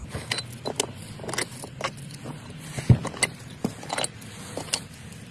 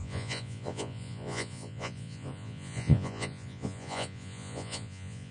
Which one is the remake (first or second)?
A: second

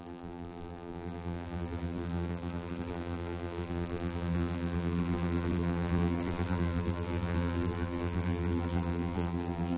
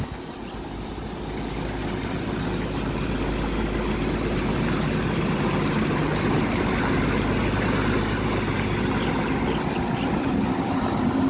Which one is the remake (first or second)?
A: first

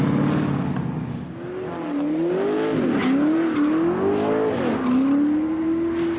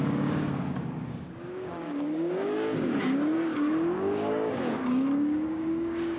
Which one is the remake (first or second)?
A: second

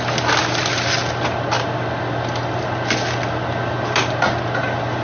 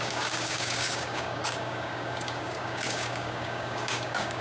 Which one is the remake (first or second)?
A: second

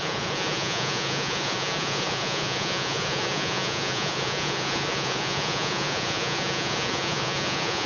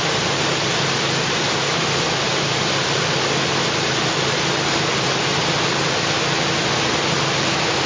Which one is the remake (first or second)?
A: first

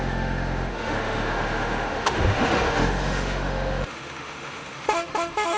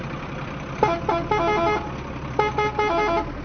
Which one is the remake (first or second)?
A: first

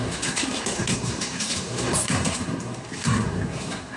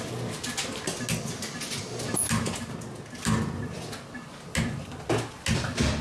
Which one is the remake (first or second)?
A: first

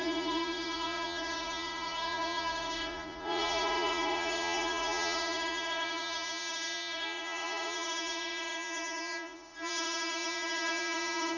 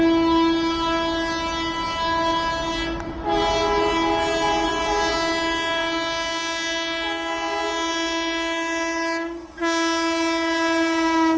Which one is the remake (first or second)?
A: first